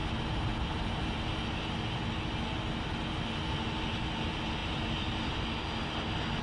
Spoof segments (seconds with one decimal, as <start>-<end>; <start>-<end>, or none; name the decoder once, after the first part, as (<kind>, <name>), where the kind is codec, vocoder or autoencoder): none